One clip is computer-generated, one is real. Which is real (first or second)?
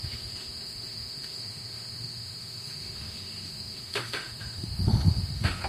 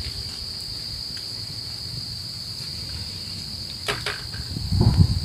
second